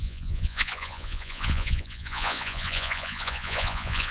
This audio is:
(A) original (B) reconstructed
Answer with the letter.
B